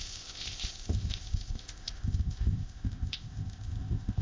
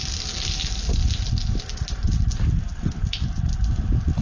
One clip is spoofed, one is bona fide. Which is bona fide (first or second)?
second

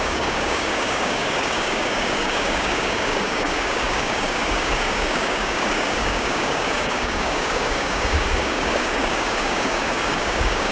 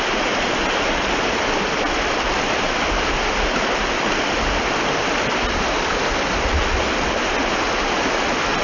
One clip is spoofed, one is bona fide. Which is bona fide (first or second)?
second